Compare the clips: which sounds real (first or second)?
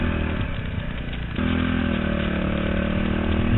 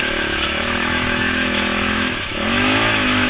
first